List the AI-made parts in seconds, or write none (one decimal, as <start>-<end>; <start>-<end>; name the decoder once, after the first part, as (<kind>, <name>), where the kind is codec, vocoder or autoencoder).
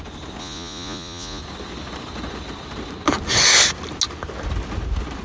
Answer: 0.4-1.4 (vocoder, Vocos)